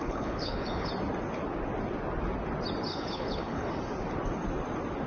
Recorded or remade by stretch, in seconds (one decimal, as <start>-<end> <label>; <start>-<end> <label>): 0.0-0.9 remade; 0.9-2.9 recorded; 2.9-3.7 remade; 3.7-5.1 recorded

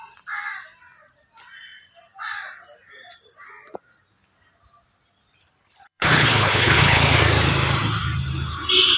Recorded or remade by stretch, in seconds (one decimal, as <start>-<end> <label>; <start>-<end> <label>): 0.0-5.4 recorded; 5.4-7.0 remade; 7.0-9.0 recorded

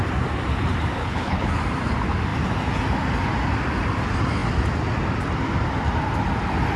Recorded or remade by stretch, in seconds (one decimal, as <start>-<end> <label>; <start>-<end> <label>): 0.0-1.0 recorded; 1.0-1.5 remade; 1.5-6.8 recorded

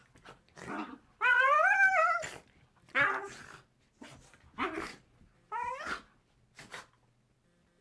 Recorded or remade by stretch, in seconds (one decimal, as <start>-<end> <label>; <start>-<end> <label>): 0.0-7.8 recorded

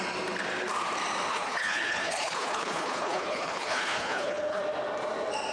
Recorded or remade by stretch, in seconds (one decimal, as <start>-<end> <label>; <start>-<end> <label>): 0.0-1.3 recorded; 1.3-4.6 remade; 4.6-5.5 recorded

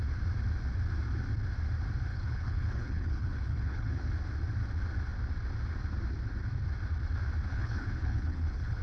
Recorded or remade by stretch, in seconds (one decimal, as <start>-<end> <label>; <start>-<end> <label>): 0.0-2.1 recorded; 2.1-4.1 remade; 4.1-7.5 recorded; 7.5-8.8 remade

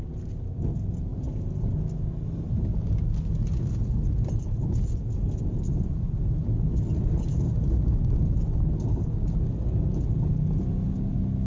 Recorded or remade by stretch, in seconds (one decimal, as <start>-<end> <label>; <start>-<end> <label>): 0.0-11.5 recorded